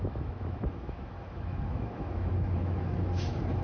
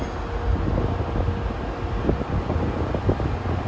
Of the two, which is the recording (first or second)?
second